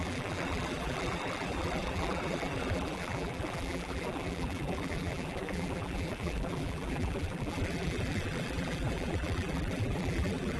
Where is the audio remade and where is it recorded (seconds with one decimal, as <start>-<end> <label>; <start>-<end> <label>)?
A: 0.0-10.6 remade